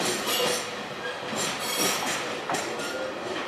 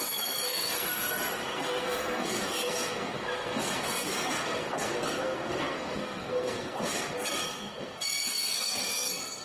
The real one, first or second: first